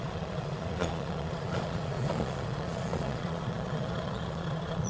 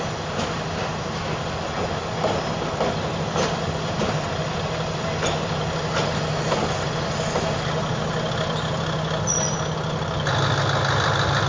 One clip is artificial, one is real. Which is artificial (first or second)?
first